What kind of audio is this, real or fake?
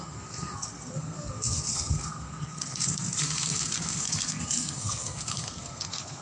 fake